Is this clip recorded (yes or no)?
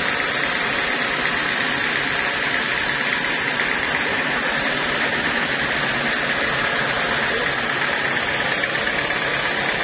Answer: yes